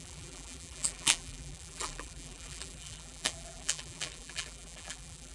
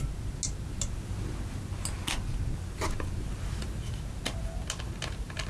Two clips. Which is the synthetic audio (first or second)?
first